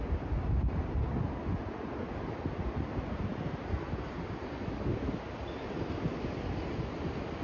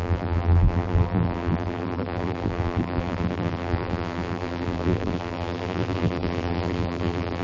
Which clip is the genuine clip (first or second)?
first